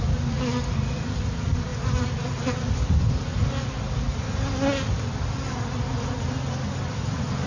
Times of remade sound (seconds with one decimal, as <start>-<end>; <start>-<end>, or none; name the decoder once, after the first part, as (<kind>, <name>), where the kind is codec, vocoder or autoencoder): none